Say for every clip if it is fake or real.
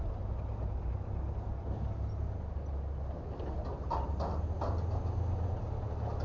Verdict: real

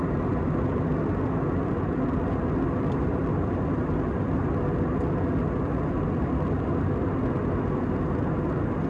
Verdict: real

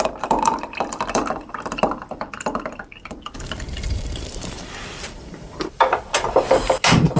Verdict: fake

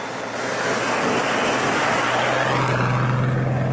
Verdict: real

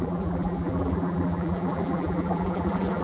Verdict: fake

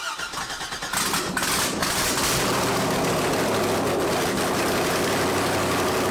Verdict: real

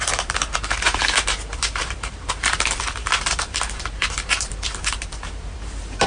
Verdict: fake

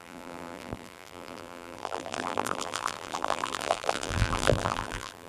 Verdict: fake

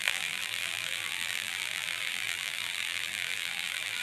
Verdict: fake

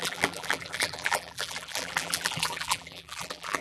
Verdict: fake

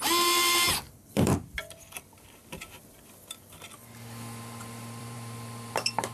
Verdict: fake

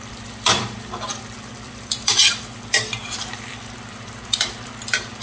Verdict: fake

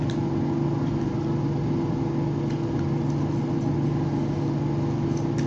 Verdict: real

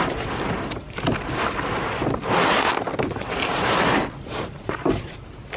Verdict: fake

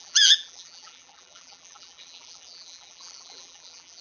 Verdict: fake